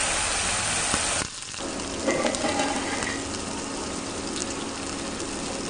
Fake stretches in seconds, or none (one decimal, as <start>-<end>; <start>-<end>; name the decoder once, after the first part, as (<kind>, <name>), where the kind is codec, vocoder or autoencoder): none